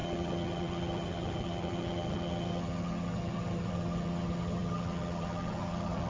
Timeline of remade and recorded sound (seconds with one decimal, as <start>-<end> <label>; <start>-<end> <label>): 0.0-6.1 remade